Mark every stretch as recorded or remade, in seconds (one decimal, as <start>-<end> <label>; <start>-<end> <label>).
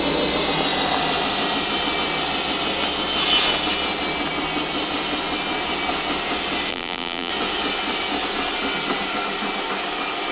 0.0-6.7 recorded; 6.7-7.3 remade; 7.3-10.3 recorded